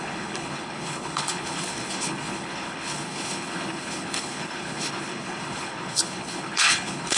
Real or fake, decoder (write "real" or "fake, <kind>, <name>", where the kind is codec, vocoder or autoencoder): fake, codec, HILCodec